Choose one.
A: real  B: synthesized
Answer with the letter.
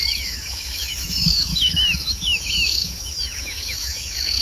B